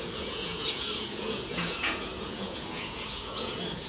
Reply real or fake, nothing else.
fake